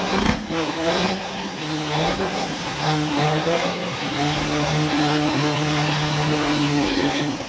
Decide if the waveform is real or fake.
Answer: fake